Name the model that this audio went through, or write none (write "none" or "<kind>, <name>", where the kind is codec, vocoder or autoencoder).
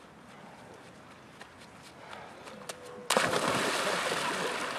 none